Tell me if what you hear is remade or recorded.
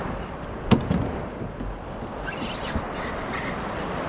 remade